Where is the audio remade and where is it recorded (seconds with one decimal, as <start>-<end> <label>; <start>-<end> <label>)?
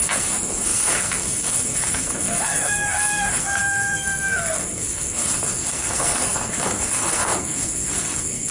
0.0-8.5 remade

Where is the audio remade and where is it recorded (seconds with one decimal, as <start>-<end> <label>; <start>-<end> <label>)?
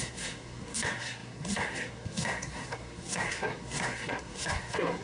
0.0-5.0 remade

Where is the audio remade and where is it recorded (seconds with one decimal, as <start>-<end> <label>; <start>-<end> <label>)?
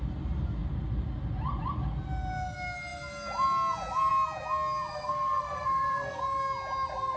0.0-4.9 recorded; 4.9-6.2 remade; 6.2-7.2 recorded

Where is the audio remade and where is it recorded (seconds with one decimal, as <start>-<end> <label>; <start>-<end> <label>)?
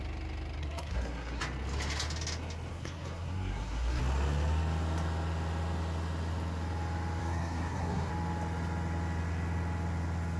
0.0-0.6 recorded; 0.6-1.4 remade; 1.4-2.7 recorded; 2.7-4.0 remade; 4.0-7.2 recorded; 7.2-8.1 remade; 8.1-10.4 recorded